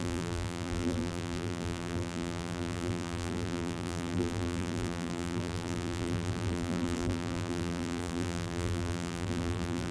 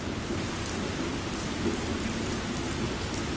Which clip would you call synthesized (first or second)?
first